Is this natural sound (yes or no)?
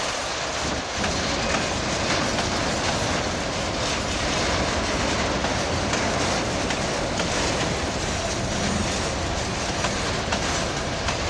yes